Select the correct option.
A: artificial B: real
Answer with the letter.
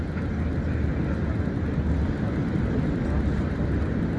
B